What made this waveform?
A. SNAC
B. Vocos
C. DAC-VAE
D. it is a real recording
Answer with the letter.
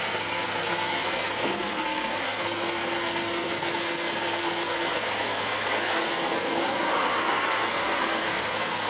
A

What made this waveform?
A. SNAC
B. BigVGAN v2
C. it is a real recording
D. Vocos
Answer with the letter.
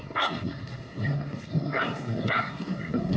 A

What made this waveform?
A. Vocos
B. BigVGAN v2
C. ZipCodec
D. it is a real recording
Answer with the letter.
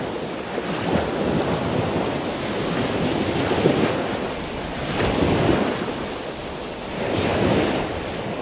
D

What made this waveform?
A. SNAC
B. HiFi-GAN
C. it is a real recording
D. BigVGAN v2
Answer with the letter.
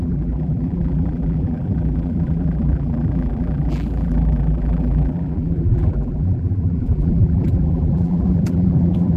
D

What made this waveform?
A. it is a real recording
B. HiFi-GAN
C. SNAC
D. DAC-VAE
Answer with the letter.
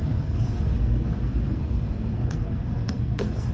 C